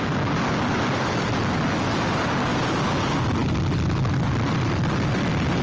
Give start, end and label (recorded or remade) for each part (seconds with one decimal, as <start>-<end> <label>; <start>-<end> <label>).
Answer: 0.0-5.6 recorded